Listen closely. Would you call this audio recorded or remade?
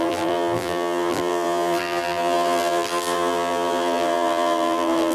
remade